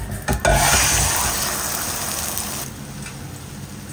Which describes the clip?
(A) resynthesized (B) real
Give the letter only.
B